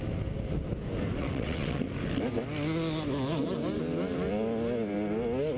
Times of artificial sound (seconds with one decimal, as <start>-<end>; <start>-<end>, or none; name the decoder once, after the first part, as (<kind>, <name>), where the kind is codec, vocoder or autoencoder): 1.2-1.8 (vocoder, WaveNeXt)